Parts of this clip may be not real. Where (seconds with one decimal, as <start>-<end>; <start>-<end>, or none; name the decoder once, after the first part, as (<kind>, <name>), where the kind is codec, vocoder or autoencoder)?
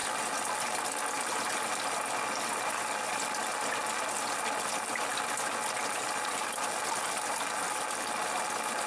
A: none